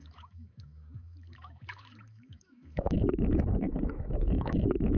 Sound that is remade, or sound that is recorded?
remade